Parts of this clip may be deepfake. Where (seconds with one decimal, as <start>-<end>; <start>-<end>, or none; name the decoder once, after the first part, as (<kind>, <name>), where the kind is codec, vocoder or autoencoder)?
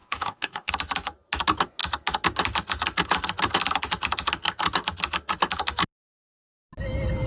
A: 0.0-0.7 (codec, DAC)